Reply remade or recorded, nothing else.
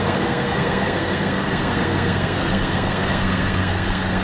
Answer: remade